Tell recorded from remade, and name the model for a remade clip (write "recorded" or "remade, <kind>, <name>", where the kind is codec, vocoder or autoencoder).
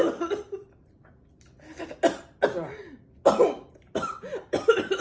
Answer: recorded